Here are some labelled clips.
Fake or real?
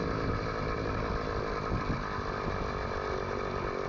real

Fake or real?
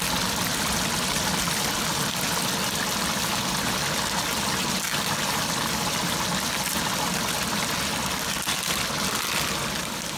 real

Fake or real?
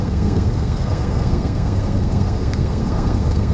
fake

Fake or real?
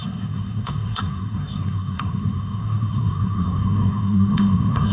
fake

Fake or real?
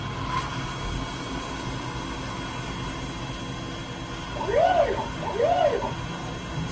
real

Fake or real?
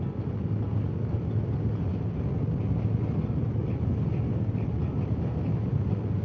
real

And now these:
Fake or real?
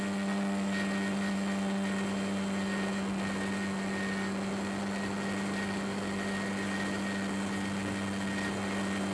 real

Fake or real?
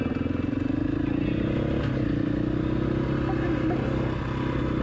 real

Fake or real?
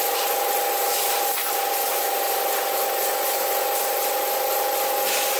real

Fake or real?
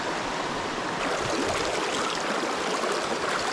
real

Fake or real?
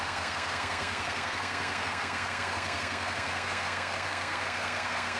fake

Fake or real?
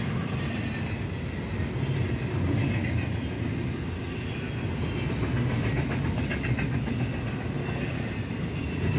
real